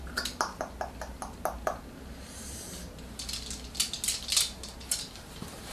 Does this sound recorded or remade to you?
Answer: recorded